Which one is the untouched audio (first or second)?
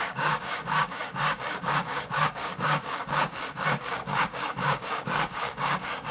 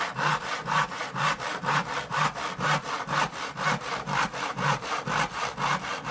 second